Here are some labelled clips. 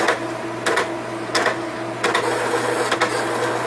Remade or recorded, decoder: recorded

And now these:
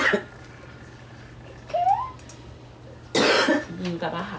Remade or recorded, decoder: recorded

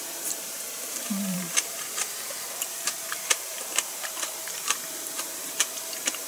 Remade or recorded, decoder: remade, vocoder, BigVGAN v2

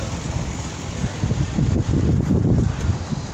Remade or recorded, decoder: recorded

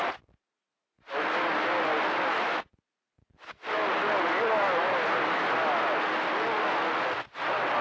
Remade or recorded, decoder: recorded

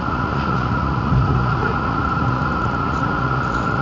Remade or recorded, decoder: remade, vocoder, Vocos